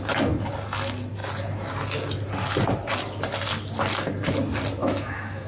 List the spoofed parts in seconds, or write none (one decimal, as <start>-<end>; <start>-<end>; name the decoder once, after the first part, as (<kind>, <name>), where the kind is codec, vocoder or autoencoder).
4.8-5.5 (autoencoder, DAC-VAE)